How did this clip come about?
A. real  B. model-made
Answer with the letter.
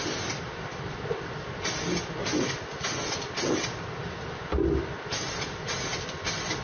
A